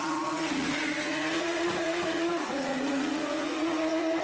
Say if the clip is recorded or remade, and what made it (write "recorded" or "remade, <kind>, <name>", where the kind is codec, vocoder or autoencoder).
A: remade, vocoder, Vocos